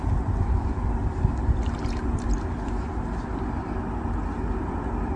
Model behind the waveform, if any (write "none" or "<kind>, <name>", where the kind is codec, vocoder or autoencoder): none